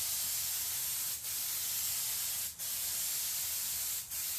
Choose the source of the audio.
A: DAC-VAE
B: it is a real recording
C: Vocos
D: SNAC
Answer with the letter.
B